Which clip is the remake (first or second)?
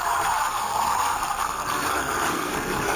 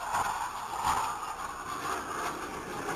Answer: first